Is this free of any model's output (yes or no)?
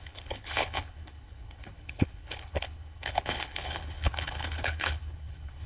no